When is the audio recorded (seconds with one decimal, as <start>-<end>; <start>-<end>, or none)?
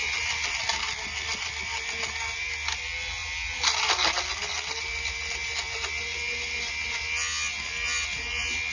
0.0-6.1; 6.6-8.7